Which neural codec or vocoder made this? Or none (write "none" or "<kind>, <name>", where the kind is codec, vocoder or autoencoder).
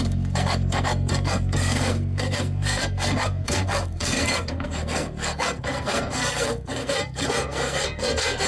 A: codec, SNAC